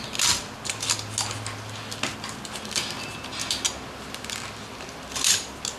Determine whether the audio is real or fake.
real